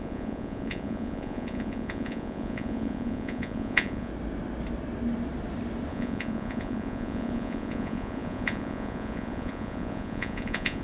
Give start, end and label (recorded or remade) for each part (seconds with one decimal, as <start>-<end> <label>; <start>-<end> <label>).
0.0-4.1 remade; 4.1-5.9 recorded; 5.9-10.8 remade